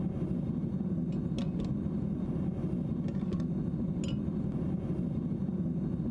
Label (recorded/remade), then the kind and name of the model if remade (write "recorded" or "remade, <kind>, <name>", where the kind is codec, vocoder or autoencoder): recorded